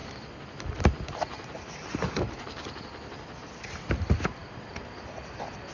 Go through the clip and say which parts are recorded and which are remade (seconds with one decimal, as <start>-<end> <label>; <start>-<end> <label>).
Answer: 0.0-5.7 recorded